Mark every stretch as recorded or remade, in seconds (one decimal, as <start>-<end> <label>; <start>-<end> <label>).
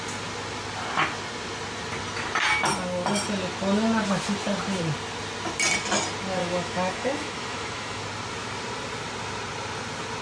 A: 0.0-6.4 recorded; 6.4-8.0 remade; 8.0-10.2 recorded